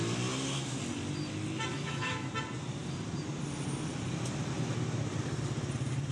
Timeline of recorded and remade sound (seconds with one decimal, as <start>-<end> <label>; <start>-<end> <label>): 0.0-1.7 recorded; 1.7-2.3 remade; 2.3-6.1 recorded